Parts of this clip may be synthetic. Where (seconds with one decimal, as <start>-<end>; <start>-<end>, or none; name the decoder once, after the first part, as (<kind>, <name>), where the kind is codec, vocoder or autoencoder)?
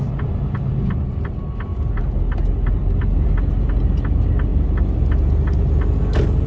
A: none